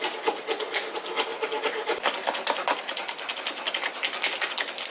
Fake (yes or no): no